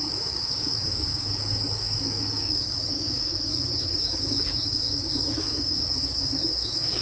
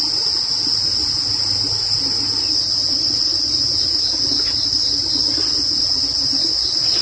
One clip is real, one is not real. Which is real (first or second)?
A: second